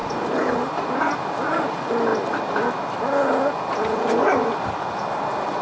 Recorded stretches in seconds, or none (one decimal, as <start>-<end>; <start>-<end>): 0.0-5.6